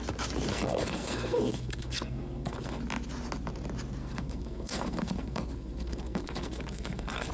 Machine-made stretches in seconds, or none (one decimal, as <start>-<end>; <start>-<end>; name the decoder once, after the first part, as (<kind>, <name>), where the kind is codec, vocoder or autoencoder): 0.5-2.8 (codec, SNAC); 4.0-7.3